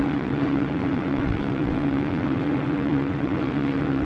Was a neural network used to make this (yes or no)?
yes